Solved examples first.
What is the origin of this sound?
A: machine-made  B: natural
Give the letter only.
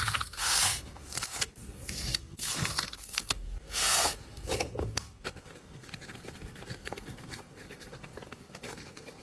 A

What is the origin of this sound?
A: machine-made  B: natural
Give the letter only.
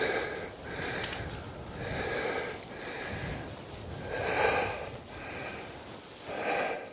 B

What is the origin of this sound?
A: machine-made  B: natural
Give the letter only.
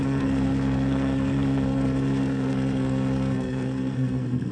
A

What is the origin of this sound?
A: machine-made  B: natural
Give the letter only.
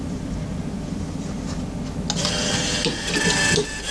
B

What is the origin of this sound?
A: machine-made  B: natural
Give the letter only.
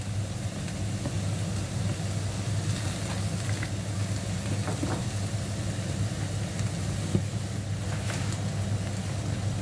B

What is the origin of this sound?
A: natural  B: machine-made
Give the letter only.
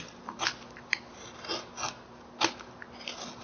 A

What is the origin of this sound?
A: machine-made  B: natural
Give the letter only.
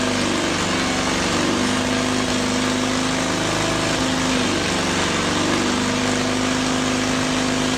B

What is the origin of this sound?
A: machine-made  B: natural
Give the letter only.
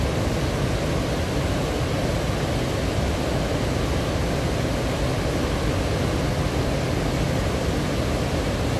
B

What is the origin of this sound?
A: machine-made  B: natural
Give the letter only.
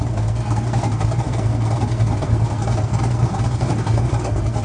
A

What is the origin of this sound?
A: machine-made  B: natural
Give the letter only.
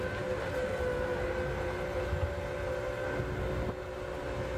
B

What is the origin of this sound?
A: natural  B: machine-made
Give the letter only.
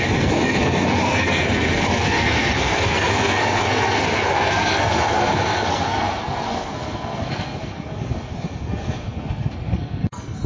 B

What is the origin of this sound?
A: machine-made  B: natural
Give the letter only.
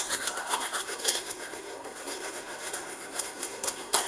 A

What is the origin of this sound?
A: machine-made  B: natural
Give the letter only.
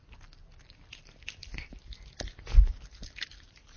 B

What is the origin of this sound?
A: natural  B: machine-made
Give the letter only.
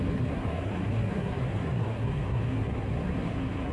B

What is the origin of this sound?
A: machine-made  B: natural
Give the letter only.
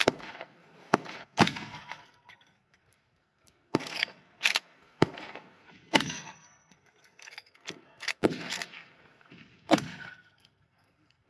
A